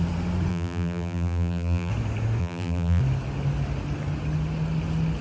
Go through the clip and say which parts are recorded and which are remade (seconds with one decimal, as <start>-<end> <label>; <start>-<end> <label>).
0.0-0.5 recorded; 0.5-1.9 remade; 1.9-2.4 recorded; 2.4-3.0 remade; 3.0-5.2 recorded